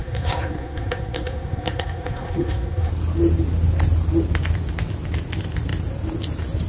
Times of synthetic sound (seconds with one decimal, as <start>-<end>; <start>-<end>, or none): 0.0-2.9